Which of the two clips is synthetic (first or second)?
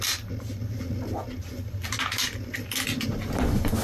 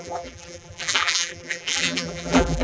second